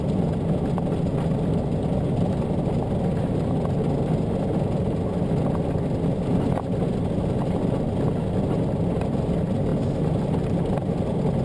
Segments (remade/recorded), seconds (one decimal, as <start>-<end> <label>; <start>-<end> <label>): 0.0-11.4 recorded